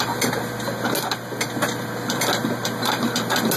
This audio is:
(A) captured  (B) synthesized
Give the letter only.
A